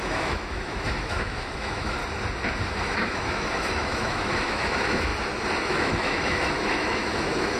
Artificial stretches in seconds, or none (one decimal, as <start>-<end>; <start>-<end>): 0.0-2.0; 2.7-5.1; 5.7-7.6